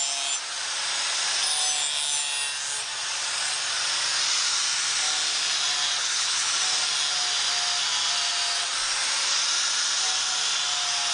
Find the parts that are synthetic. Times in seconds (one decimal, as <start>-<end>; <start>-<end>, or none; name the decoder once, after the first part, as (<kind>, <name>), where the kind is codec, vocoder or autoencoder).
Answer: 6.0-6.5 (codec, HILCodec)